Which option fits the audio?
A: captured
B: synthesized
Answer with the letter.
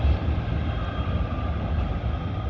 A